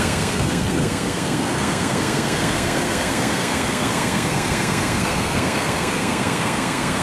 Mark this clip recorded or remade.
remade